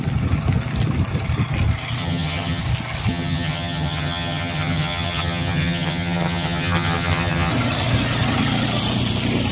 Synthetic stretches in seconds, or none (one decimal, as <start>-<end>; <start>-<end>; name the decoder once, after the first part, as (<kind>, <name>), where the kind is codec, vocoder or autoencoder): 2.0-2.6 (vocoder, HiFi-GAN); 3.1-7.5